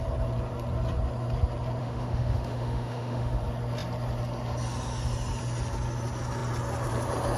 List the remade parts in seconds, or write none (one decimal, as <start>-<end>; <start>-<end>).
1.8-3.4